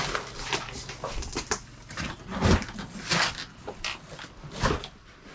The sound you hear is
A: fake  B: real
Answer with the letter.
B